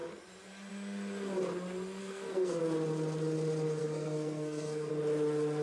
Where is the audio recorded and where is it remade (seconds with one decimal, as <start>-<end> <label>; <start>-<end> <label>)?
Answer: 0.0-2.0 recorded; 2.0-2.6 remade; 2.6-3.8 recorded; 3.8-4.9 remade; 4.9-5.6 recorded